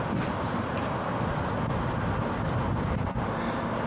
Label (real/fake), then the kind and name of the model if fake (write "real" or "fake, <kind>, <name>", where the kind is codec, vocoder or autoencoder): real